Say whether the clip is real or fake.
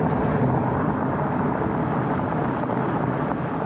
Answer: real